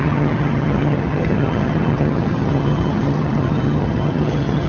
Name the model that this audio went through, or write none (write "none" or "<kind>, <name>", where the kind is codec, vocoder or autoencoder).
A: vocoder, HiFi-GAN